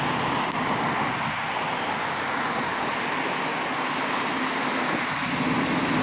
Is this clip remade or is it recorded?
recorded